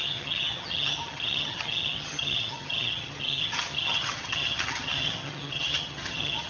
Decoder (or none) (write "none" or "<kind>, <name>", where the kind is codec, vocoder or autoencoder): vocoder, HiFi-GAN